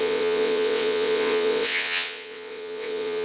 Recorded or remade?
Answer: remade